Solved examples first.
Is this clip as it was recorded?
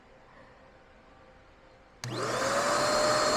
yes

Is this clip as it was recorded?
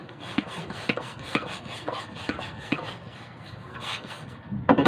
no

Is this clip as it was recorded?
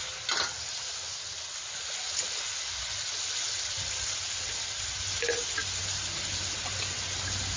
yes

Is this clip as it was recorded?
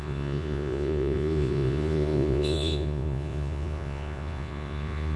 no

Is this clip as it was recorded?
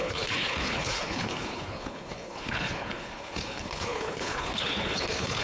no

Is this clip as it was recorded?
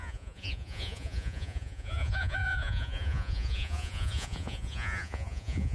no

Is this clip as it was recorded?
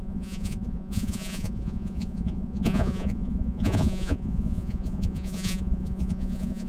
no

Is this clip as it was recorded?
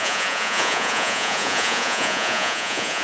no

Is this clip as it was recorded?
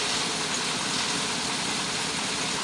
yes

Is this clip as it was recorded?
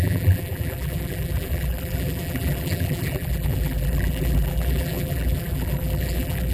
no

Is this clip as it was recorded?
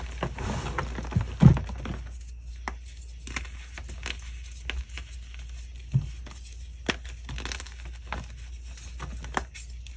yes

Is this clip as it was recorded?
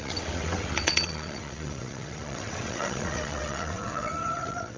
no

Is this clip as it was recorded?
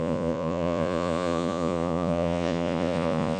no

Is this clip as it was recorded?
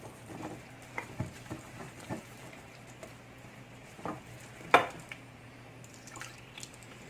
no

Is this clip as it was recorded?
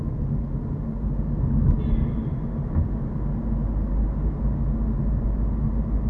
yes